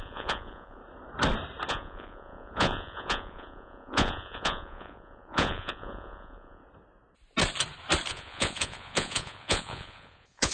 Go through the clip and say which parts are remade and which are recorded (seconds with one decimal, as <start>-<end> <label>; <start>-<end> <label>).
0.0-0.8 remade; 0.8-1.7 recorded; 1.7-6.6 remade; 6.6-8.1 recorded; 8.1-10.5 remade